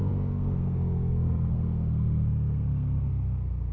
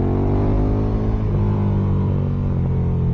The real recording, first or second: second